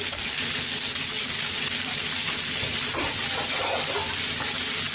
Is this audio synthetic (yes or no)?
no